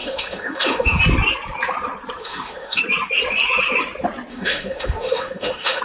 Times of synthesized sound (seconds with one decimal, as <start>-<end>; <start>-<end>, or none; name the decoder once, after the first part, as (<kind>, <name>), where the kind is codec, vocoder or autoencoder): 0.0-1.0 (autoencoder, DAC-VAE); 2.2-2.8; 4.3-5.8